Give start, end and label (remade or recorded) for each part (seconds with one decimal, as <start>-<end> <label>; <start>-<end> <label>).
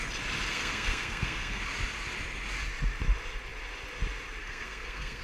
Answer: 0.0-0.5 recorded; 0.5-1.6 remade; 1.6-4.4 recorded; 4.4-5.2 remade